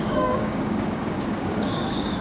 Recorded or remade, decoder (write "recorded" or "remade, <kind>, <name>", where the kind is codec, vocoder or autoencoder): remade, codec, DAC